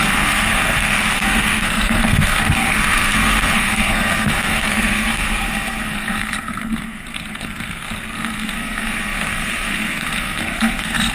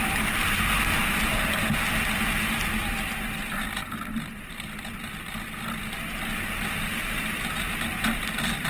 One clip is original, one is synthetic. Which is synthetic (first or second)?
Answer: first